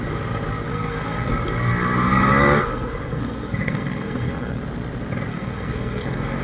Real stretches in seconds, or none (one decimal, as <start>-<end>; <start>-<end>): 0.0-0.7; 1.3-2.6; 4.6-5.3